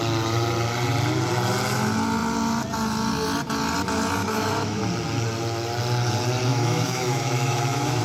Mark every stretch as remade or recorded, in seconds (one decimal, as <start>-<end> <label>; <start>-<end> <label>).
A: 0.0-4.2 recorded; 4.2-4.8 remade; 4.8-6.5 recorded; 6.5-8.0 remade